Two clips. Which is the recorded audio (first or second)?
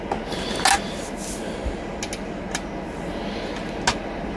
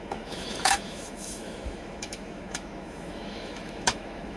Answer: first